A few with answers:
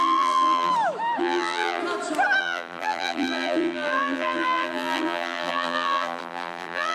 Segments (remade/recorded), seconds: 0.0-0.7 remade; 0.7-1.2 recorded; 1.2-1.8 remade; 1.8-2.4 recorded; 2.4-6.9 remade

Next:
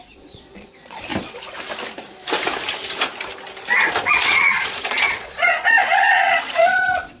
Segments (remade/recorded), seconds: 0.0-1.1 remade; 1.1-4.1 recorded; 4.1-7.2 remade

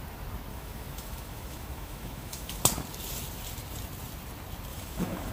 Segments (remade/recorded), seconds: 0.0-0.5 recorded; 0.5-2.6 remade; 2.6-4.7 recorded; 4.7-5.3 remade

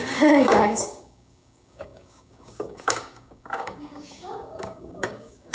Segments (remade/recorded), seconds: 0.0-5.5 remade

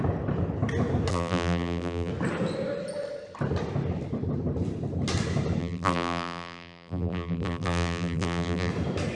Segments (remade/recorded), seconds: 0.0-1.1 recorded; 1.1-2.1 remade; 2.1-5.6 recorded; 5.6-8.7 remade; 8.7-9.1 recorded